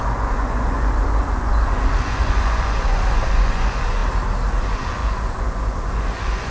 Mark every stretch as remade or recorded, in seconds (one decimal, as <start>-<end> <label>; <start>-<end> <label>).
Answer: 0.0-4.0 remade; 4.0-4.6 recorded; 4.6-6.5 remade